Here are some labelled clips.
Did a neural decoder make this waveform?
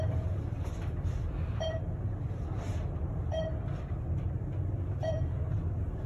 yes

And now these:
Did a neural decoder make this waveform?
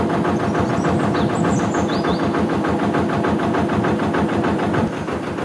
yes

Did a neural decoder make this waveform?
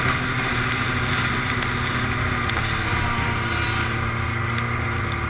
no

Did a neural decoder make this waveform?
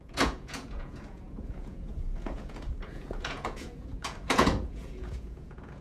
yes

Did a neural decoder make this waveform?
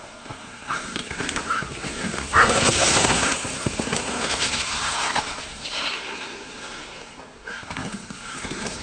yes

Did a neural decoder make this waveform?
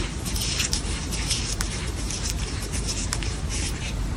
yes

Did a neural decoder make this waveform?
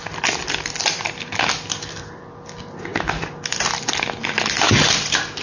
no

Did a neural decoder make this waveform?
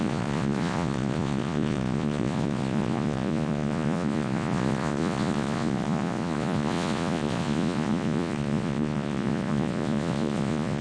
yes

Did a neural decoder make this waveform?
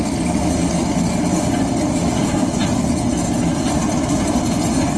no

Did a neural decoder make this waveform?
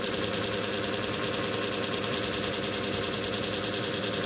no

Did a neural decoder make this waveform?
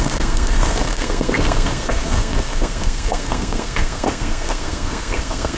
yes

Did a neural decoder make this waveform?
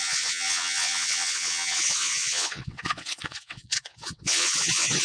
yes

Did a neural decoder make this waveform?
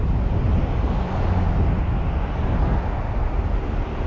no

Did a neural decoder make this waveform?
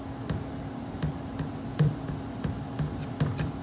no